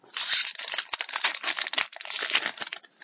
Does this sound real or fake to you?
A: real